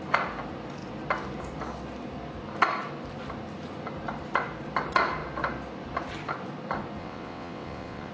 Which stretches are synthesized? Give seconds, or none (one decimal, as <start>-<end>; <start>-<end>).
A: 7.0-8.1